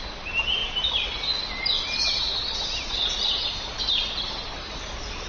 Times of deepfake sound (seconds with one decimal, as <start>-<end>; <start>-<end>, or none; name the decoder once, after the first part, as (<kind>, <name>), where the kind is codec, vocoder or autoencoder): none